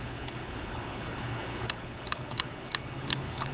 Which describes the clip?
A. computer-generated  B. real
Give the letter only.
A